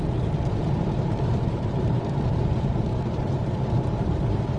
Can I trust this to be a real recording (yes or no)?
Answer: no